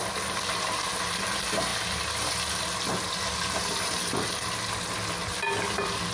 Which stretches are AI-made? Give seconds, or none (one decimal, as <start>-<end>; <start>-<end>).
none